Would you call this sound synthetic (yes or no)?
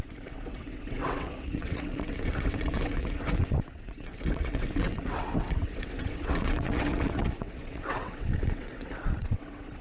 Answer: yes